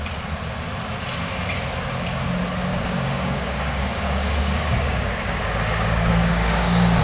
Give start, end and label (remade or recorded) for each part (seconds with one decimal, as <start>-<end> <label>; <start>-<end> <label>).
0.0-2.7 recorded; 2.7-7.0 remade